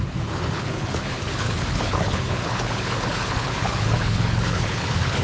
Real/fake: fake